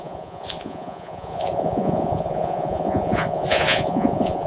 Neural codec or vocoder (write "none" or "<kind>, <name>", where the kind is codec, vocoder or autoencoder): vocoder, Vocos